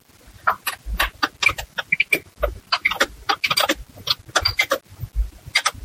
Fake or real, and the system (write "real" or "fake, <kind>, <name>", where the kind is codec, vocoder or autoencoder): real